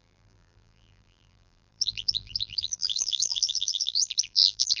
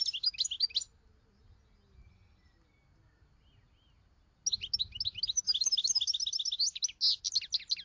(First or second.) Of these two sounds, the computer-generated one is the first